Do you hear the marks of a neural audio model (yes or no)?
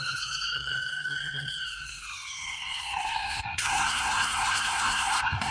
yes